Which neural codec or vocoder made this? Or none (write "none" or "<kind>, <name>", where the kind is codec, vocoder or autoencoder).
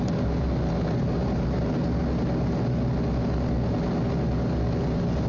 none